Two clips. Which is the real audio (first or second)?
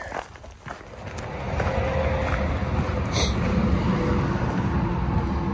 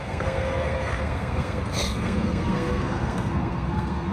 first